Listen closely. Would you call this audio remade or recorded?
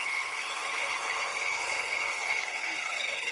remade